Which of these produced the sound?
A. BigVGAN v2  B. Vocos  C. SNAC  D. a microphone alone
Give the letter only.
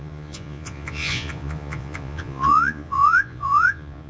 B